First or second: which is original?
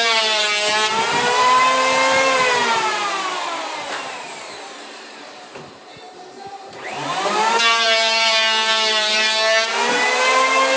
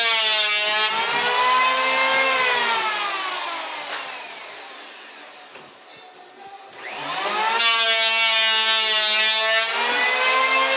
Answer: second